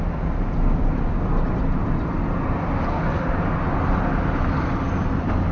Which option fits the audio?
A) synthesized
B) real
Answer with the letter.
B